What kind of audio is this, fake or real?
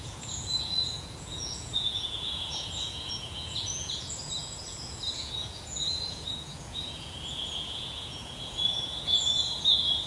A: fake